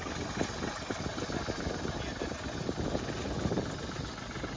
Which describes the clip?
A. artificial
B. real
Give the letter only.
B